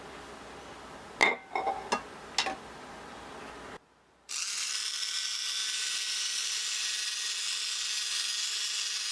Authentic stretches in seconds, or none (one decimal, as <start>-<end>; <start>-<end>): 0.0-9.1